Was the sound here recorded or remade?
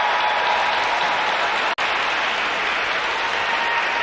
recorded